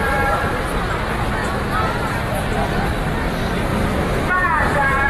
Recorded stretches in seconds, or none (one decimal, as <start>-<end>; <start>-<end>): 0.0-3.7; 4.3-5.1